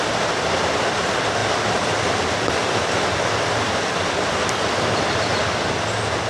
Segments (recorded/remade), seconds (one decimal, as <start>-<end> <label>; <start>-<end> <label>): 0.0-1.4 recorded; 1.4-5.2 remade; 5.2-6.3 recorded